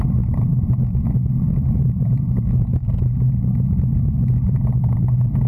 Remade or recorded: recorded